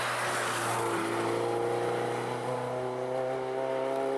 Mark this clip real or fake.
real